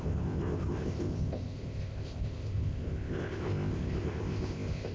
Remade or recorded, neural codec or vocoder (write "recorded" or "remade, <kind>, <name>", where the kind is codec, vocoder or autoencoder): remade, codec, ZipCodec